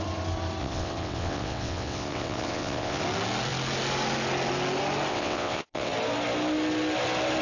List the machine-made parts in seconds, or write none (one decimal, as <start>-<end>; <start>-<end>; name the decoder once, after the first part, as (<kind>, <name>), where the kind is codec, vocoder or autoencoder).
0.6-3.0 (vocoder, WaveNeXt); 5.1-5.9